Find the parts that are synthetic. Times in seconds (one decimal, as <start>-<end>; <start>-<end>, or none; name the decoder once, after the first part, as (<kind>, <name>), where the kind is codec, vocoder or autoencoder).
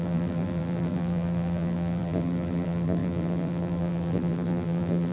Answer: 0.0-5.1 (vocoder, BigVGAN v2)